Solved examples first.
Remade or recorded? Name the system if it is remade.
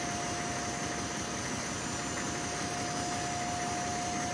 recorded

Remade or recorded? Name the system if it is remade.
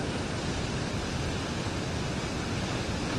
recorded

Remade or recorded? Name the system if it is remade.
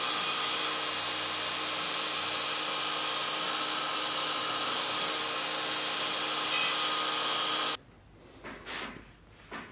recorded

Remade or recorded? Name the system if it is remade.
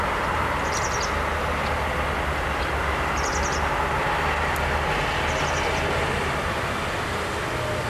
recorded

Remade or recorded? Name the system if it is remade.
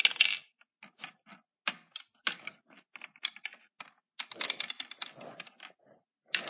recorded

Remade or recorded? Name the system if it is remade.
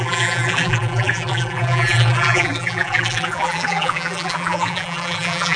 remade, vocoder, BigVGAN v2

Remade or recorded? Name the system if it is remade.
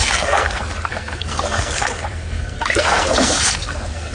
remade, codec, SNAC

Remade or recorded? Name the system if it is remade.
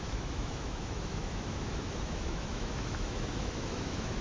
remade, autoencoder, DAC-VAE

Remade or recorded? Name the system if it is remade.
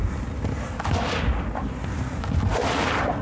recorded